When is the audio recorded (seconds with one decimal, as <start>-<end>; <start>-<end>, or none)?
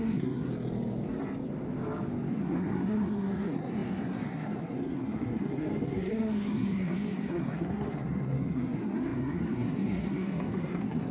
0.5-2.3